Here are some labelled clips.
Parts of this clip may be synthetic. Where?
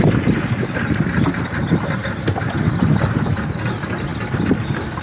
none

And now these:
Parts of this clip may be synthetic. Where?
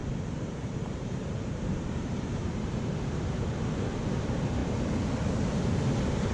0.0-3.8 (vocoder, BigVGAN v2)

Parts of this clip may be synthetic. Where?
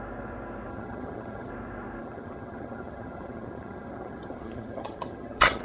0.7-1.5 (vocoder, HiFi-GAN); 2.0-5.6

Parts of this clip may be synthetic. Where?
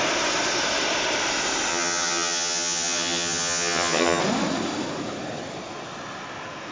1.7-4.2 (vocoder, HiFi-GAN)